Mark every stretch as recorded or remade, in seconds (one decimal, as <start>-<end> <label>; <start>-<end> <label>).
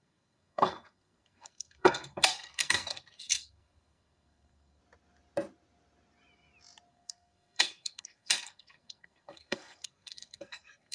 0.0-4.8 remade; 4.8-6.9 recorded; 6.9-10.9 remade